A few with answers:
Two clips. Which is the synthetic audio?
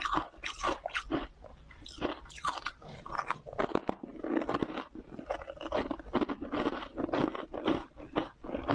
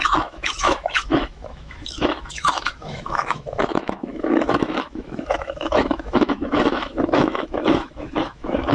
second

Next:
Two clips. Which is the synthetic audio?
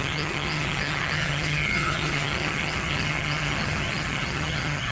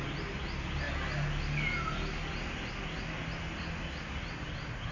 first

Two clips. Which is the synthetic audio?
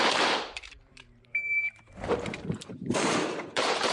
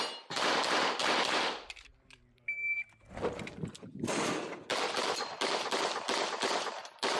first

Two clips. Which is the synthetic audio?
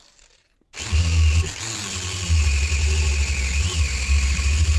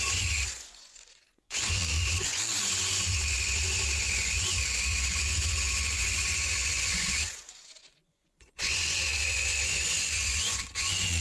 second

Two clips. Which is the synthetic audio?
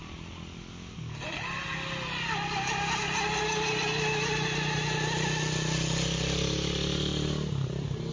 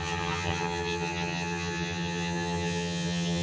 second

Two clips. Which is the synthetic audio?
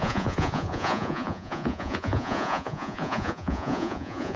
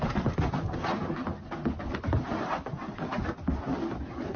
first